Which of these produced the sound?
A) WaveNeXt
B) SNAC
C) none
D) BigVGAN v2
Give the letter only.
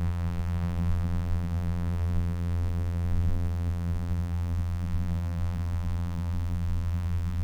D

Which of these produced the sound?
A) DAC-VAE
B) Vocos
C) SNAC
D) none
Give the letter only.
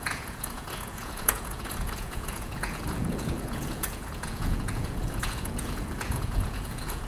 B